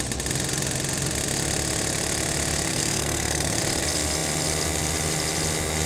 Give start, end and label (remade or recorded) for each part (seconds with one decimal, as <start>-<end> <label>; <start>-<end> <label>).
0.0-2.7 recorded; 2.7-3.6 remade; 3.6-5.9 recorded